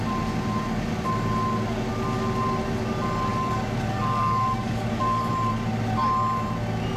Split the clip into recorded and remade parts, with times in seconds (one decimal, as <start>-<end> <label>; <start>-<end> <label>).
0.0-3.3 recorded; 3.3-5.3 remade; 5.3-7.0 recorded